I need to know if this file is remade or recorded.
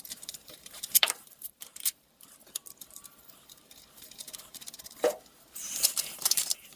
remade